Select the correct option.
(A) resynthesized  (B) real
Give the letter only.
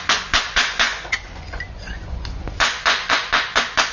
A